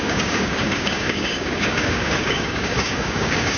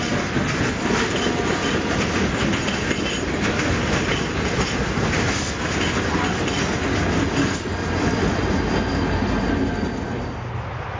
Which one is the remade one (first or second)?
first